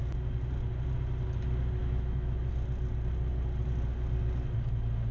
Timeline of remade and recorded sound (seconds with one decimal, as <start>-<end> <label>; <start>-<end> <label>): 0.0-1.8 recorded; 1.8-2.5 remade; 2.5-5.1 recorded